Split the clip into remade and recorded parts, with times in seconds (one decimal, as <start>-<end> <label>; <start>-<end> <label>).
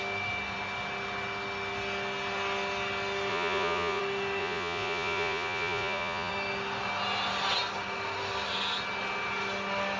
0.0-3.3 recorded; 3.3-4.0 remade; 4.0-4.4 recorded; 4.4-6.3 remade; 6.3-10.0 recorded